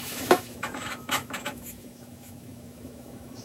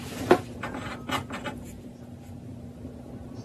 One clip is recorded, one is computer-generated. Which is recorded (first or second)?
second